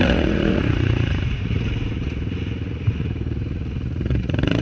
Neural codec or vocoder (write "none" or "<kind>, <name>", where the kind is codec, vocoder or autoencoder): vocoder, Vocos